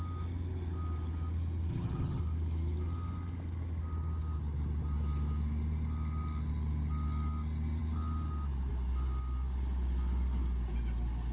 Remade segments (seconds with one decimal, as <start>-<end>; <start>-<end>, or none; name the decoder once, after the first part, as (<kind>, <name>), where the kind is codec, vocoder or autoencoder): 1.7-2.2 (vocoder, HiFi-GAN)